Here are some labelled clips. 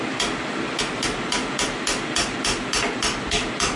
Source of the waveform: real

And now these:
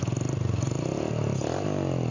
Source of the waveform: real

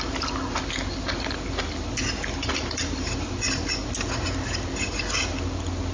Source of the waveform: real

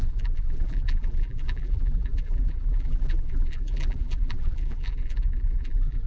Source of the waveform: fake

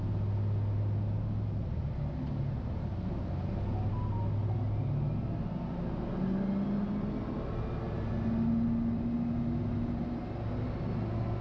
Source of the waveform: real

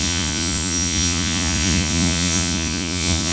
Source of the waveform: fake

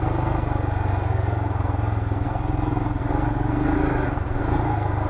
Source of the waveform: fake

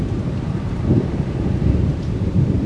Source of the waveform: fake